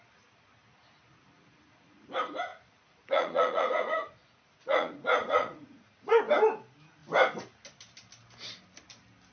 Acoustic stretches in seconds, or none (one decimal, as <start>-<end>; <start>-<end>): 0.0-2.5; 6.2-9.3